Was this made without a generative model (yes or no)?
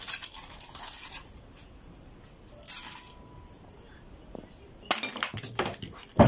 yes